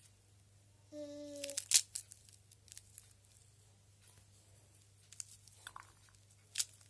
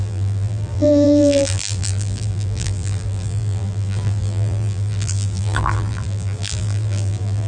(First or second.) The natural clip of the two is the first